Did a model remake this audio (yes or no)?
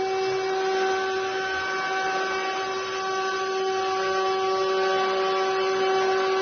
no